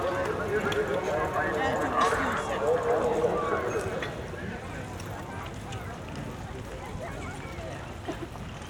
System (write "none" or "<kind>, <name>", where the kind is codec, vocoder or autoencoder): none